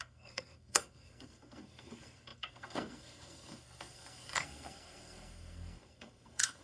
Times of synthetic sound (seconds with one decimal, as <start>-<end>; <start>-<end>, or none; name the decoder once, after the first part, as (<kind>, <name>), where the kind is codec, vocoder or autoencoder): 0.0-6.6 (codec, SNAC)